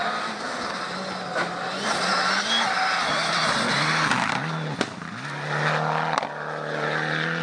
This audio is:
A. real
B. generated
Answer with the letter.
A